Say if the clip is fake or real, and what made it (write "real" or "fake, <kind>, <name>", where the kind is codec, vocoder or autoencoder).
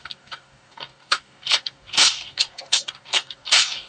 fake, codec, DAC